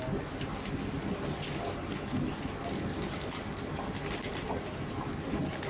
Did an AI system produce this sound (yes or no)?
no